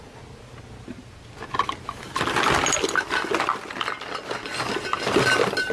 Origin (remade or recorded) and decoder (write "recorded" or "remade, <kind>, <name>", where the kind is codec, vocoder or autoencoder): recorded